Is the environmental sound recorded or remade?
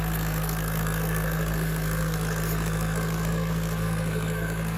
remade